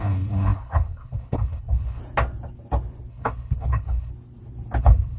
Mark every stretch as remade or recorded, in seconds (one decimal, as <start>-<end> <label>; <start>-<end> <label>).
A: 0.0-2.0 remade; 2.0-3.1 recorded; 3.1-4.1 remade; 4.1-4.8 recorded; 4.8-5.2 remade